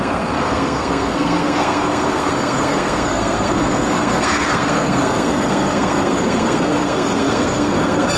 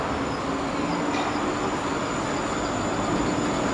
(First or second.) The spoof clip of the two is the first